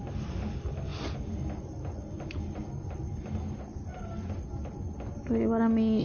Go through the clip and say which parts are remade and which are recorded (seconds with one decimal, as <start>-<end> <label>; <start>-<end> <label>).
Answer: 0.0-6.0 recorded